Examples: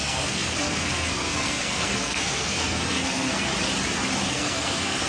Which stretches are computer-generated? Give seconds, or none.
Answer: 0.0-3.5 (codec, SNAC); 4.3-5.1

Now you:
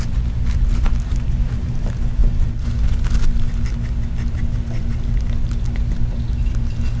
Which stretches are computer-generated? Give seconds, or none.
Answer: 1.1-1.8 (vocoder, BigVGAN v2)

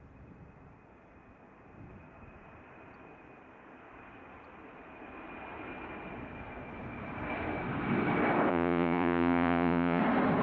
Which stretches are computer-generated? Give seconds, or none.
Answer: 8.5-10.0 (vocoder, Vocos)

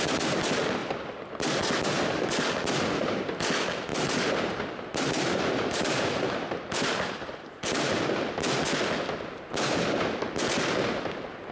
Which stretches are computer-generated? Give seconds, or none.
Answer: 3.9-8.0 (vocoder, BigVGAN v2)

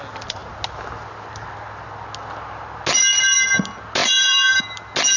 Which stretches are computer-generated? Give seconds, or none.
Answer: 4.0-4.6 (vocoder, BigVGAN v2)

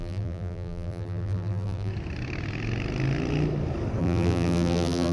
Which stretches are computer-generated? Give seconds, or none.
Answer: 0.0-1.9 (vocoder, BigVGAN v2); 4.0-5.1